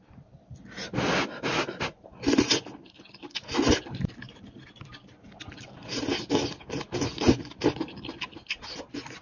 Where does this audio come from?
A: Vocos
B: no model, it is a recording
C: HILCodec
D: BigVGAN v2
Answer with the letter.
B